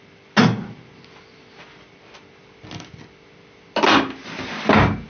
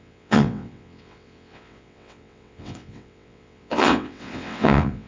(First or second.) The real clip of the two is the first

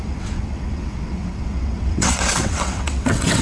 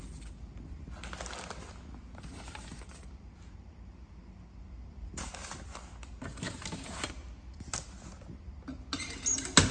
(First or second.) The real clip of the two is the second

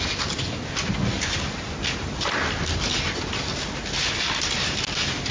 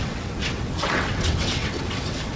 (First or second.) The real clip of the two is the first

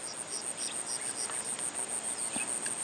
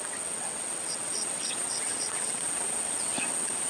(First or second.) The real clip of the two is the first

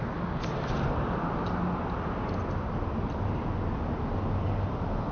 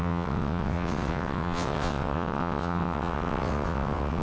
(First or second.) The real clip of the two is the first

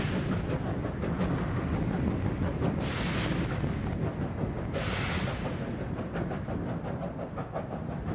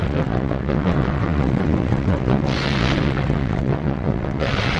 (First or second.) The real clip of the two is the first